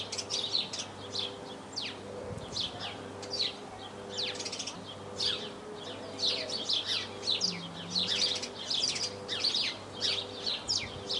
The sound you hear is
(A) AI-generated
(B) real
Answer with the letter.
B